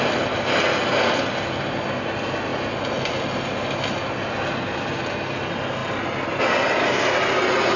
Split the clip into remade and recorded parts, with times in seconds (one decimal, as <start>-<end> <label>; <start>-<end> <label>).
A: 0.0-7.8 recorded